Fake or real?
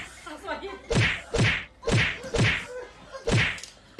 real